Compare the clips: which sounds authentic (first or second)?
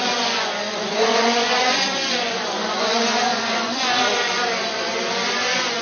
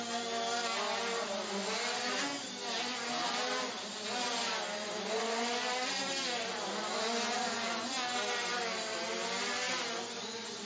second